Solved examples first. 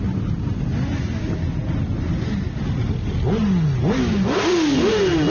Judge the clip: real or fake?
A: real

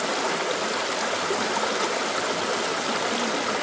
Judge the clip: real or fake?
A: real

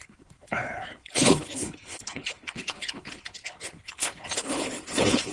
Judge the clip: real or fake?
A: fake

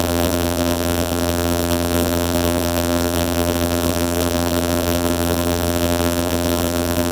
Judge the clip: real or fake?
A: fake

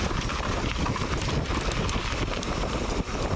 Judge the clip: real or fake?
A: fake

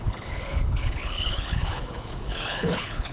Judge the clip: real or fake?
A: fake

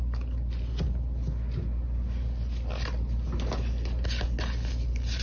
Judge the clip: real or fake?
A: real